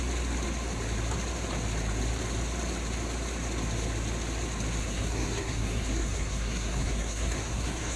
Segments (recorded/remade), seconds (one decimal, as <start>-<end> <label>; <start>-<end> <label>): 0.0-4.8 recorded; 4.8-8.0 remade